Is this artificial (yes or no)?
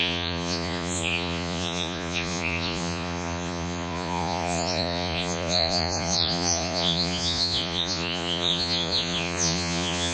yes